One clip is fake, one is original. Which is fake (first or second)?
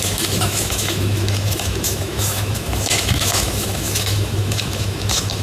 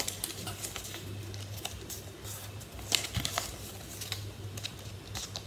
first